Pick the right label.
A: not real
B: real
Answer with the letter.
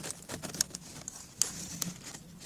B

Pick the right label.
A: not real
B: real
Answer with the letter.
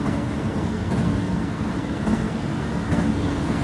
A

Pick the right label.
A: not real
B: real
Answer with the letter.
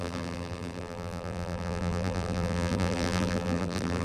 A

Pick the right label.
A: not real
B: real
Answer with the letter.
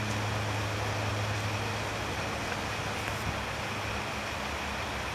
B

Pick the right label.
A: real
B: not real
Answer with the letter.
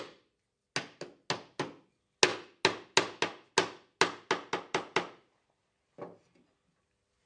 A